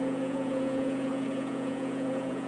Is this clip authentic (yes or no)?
no